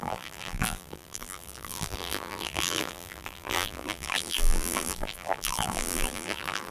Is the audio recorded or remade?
remade